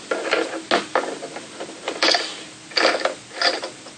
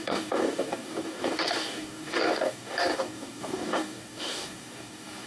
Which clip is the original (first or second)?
first